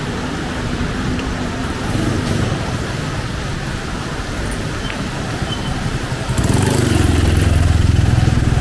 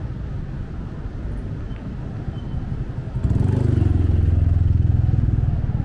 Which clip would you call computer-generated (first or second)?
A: first